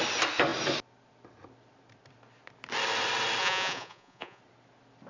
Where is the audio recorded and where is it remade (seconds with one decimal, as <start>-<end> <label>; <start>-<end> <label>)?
0.0-3.4 recorded; 3.4-4.4 remade; 4.4-5.1 recorded